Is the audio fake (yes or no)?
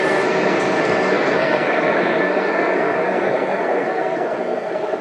yes